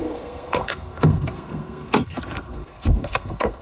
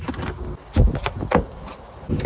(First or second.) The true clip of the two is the second